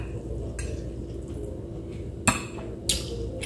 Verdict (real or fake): real